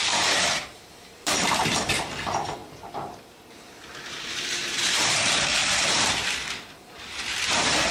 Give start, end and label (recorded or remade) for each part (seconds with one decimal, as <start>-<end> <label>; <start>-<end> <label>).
0.0-2.6 remade; 2.6-4.0 recorded; 4.0-7.9 remade